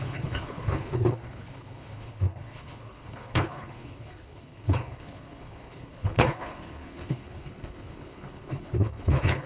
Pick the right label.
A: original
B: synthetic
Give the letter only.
B